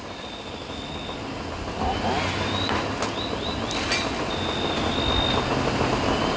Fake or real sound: real